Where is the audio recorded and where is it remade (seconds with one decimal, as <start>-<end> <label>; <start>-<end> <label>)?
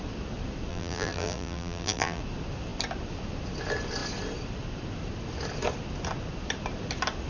0.0-0.7 recorded; 0.7-2.2 remade; 2.2-7.3 recorded